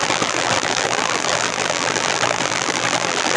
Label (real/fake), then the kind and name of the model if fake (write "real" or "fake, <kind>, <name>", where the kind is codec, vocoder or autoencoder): fake, vocoder, BigVGAN v2